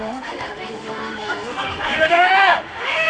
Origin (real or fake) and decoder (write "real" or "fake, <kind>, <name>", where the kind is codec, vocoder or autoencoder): fake, autoencoder, DAC-VAE